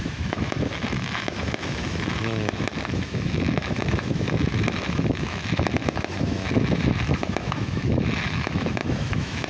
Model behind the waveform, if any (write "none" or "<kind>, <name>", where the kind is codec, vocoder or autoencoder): autoencoder, DAC-VAE